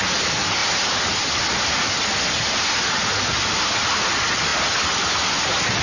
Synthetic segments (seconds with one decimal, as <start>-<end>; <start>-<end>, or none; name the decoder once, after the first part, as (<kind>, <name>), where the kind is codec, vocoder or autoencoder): none